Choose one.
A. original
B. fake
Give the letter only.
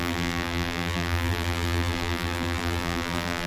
B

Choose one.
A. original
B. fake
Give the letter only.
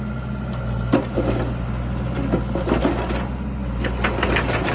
A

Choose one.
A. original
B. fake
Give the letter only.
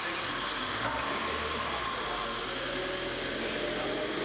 A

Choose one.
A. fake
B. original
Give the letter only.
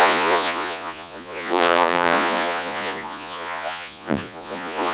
A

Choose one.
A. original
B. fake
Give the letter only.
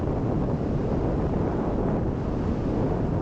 A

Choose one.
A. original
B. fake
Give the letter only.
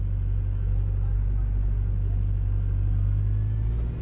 A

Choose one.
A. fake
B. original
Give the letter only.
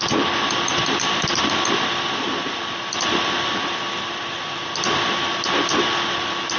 B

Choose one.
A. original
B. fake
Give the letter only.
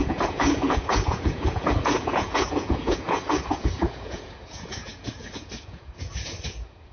B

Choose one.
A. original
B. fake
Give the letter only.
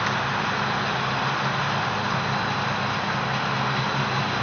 A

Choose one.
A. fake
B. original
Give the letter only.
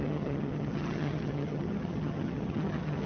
A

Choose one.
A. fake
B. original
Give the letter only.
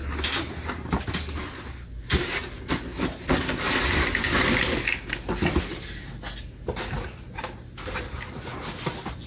B